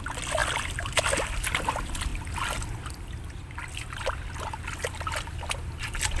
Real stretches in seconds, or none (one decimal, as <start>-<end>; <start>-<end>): 0.0-6.2